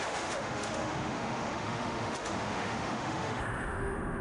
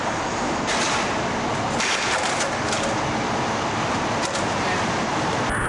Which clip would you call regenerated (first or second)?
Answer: first